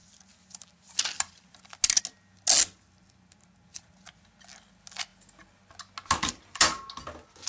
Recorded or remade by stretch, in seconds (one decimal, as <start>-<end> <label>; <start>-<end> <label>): 0.0-7.5 recorded